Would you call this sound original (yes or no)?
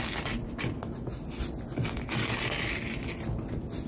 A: yes